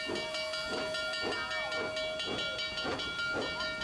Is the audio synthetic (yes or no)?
no